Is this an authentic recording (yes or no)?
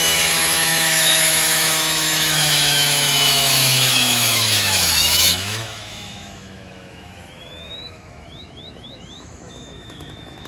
no